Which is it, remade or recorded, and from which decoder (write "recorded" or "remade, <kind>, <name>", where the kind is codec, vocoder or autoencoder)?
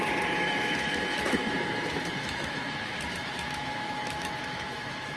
remade, autoencoder, DAC-VAE